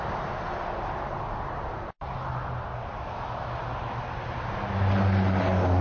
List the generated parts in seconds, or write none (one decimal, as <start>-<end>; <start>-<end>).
none